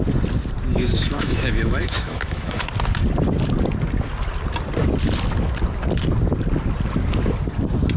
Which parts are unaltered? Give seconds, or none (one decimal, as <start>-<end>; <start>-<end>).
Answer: 0.0-0.7; 2.7-8.0